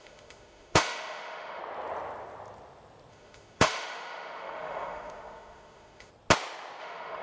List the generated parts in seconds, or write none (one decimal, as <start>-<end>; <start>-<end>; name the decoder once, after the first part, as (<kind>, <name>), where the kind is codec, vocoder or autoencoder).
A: 0.0-1.6 (autoencoder, DAC-VAE); 3.1-6.1; 6.8-7.2